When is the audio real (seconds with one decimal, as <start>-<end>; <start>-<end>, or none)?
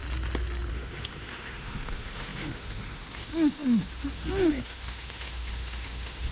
0.0-0.7